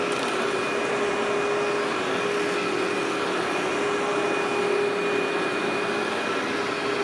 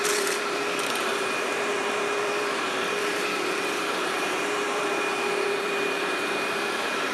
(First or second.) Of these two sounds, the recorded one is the first